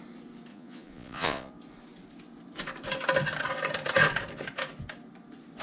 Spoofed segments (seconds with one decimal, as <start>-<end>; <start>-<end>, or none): 0.5-1.5